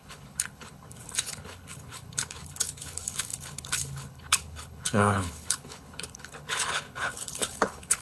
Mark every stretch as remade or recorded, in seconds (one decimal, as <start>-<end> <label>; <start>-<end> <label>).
0.0-8.0 remade